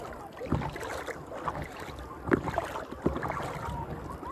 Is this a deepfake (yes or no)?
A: no